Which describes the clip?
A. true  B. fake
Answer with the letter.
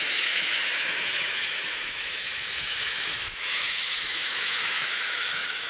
B